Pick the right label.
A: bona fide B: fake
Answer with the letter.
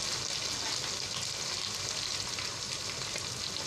A